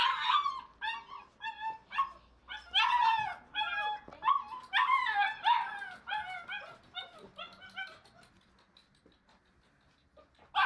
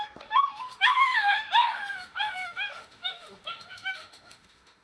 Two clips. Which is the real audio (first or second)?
first